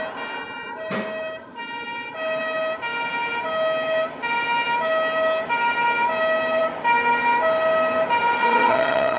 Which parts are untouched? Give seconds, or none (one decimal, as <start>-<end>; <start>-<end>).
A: 0.0-8.4